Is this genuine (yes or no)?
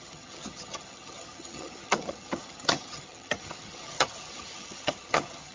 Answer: no